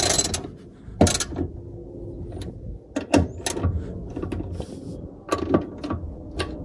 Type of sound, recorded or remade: recorded